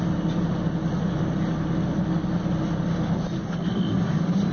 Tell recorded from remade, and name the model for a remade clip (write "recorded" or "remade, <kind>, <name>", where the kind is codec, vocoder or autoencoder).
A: recorded